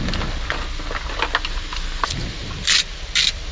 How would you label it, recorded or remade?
recorded